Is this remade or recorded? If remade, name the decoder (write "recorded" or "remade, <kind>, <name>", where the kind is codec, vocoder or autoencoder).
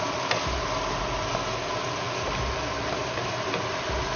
recorded